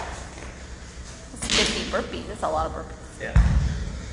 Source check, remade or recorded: recorded